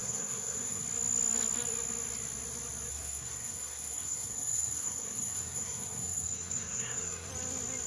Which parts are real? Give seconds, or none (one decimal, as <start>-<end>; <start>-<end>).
0.8-2.9; 7.3-7.9